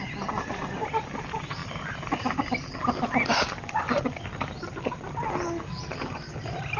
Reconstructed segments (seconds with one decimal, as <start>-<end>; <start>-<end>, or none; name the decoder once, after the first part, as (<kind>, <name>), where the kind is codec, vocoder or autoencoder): none